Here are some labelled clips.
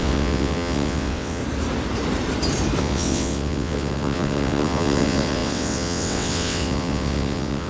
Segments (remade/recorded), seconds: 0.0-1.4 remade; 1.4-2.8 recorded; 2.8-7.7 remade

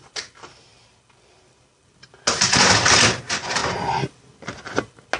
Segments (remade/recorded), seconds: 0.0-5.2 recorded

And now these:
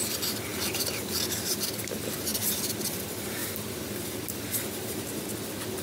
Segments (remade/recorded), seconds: 0.0-5.8 recorded